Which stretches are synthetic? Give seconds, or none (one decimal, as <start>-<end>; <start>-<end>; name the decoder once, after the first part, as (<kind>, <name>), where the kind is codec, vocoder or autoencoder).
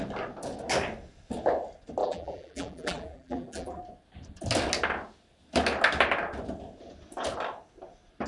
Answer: 2.0-3.8 (vocoder, BigVGAN v2)